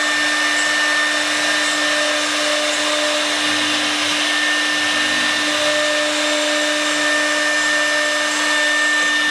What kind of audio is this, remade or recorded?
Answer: recorded